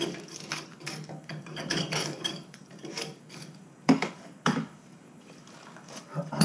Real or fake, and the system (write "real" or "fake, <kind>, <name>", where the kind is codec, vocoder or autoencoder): fake, codec, DAC